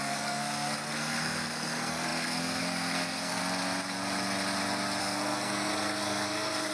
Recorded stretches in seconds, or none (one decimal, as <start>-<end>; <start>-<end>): 3.4-5.0